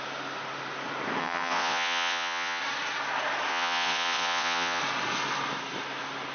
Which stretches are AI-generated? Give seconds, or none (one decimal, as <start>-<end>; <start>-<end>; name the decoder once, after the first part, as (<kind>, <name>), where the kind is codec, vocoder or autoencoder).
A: 1.2-2.6 (vocoder, WaveNeXt); 3.5-4.8